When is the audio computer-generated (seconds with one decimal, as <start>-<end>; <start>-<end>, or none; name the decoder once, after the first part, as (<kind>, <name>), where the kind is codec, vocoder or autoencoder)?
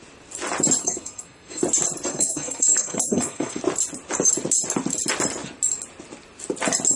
0.8-1.6 (codec, SNAC); 2.1-3.6